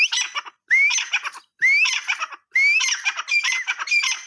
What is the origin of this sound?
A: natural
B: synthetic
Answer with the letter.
A